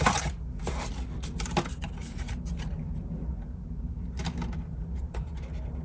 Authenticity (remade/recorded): recorded